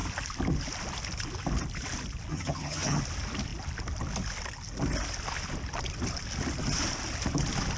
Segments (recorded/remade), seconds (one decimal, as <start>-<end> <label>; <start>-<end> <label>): 0.0-2.3 recorded; 2.3-3.0 remade; 3.0-7.8 recorded